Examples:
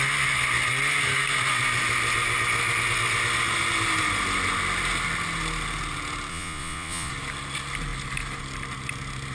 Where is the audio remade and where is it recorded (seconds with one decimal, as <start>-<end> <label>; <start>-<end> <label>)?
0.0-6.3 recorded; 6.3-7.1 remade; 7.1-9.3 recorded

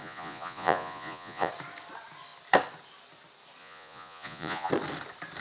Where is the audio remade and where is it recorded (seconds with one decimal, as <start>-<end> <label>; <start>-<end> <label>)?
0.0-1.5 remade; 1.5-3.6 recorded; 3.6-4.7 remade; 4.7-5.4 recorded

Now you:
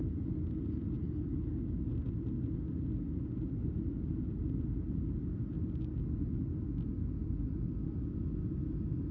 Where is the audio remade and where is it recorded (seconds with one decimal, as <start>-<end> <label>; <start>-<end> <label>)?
0.0-9.1 recorded

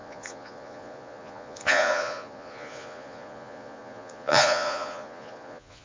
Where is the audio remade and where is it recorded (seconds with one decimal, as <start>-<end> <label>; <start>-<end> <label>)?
0.0-5.8 remade